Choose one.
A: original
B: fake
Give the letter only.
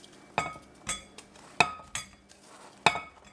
A